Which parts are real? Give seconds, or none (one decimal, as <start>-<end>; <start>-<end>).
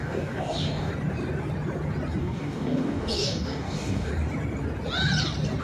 0.9-2.2; 4.1-5.6